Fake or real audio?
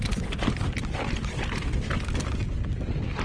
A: real